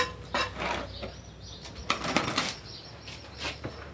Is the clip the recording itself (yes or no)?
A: yes